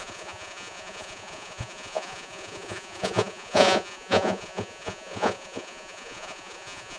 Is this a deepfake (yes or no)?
yes